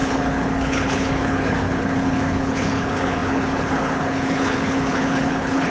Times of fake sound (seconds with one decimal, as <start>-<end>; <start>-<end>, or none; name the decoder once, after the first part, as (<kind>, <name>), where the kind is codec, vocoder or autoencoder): 0.0-5.7 (codec, HILCodec)